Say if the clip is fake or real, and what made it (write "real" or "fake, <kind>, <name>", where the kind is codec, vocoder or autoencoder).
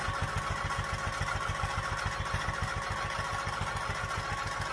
real